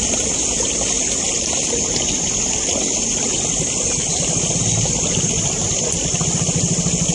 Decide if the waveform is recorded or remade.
recorded